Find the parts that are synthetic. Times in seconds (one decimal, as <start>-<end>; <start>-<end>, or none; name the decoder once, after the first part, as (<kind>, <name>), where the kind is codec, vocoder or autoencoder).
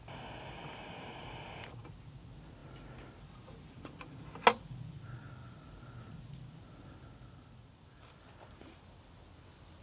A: none